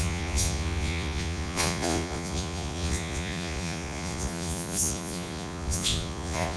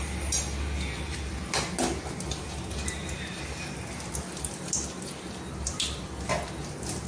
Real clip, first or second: second